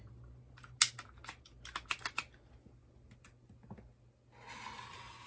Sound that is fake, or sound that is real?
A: real